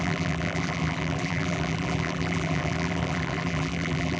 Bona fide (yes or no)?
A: no